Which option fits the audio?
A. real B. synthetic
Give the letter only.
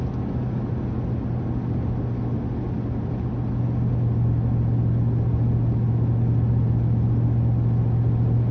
A